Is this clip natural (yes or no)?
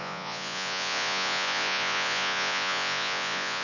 no